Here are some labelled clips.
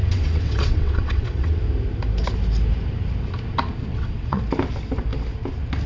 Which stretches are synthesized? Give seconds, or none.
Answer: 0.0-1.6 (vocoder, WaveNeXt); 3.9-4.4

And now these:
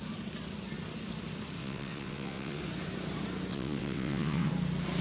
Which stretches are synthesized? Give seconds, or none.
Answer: 1.6-2.6 (vocoder, WaveNeXt); 3.5-4.5

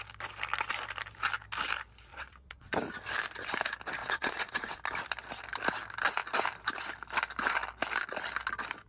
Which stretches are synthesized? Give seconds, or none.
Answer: 2.1-2.8 (vocoder, WaveNeXt); 4.0-4.8

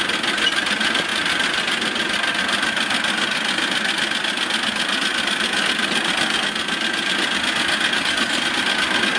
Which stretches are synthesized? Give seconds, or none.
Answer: none

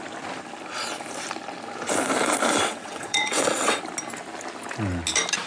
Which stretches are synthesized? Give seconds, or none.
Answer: 2.7-3.8 (vocoder, WaveNeXt)

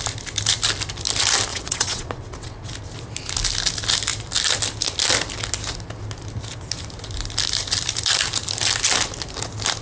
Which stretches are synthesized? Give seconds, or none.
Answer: 1.5-2.7 (vocoder, WaveNeXt)

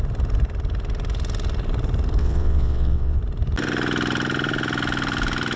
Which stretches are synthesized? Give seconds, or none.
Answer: 2.2-3.2 (vocoder, WaveNeXt)

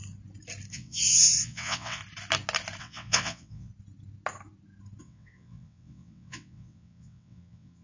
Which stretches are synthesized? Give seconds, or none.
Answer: 0.7-2.0 (vocoder, WaveNeXt); 2.8-3.7; 5.0-7.8